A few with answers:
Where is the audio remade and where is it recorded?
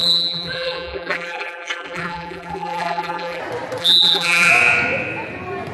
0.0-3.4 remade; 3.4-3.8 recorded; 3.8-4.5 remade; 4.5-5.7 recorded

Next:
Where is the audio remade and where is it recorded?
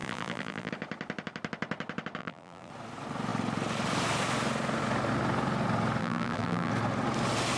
0.0-0.7 remade; 0.7-2.2 recorded; 2.2-2.7 remade; 2.7-6.0 recorded; 6.0-6.7 remade; 6.7-7.6 recorded